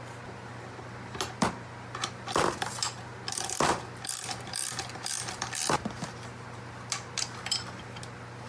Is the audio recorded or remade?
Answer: recorded